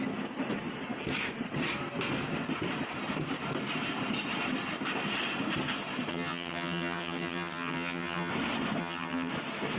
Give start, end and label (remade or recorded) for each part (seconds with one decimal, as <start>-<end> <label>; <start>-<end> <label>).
0.0-6.1 recorded; 6.1-8.3 remade; 8.3-8.8 recorded; 8.8-9.3 remade; 9.3-9.8 recorded